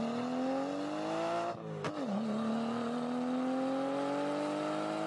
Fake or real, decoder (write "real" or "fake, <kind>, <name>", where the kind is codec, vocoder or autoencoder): real